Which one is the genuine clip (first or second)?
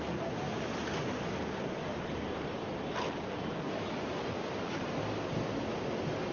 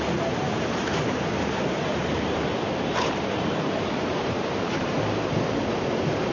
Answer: first